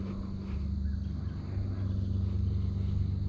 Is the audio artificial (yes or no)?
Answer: no